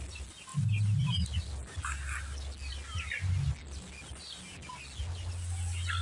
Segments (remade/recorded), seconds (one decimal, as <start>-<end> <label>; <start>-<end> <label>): 0.0-6.0 recorded